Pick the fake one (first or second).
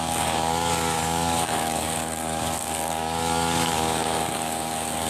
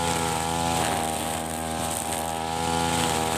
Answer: first